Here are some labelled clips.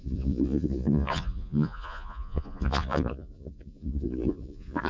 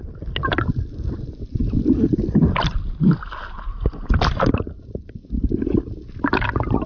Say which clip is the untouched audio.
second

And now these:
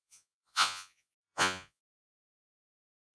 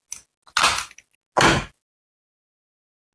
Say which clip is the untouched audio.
second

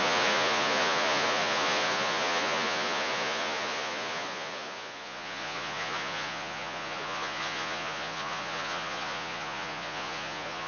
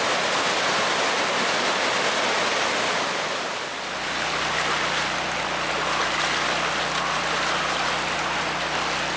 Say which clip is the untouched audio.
second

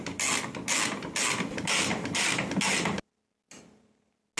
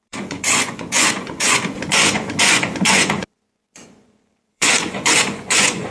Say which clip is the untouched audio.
first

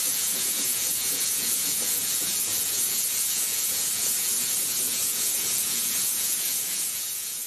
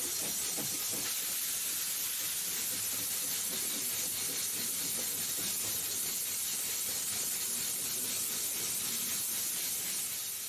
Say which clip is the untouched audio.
second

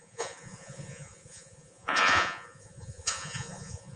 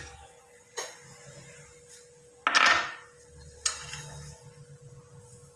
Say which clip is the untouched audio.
second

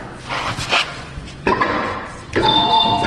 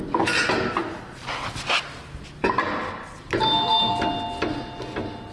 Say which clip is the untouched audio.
second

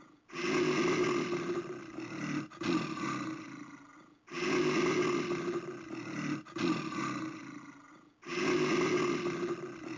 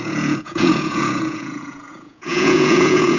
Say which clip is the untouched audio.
first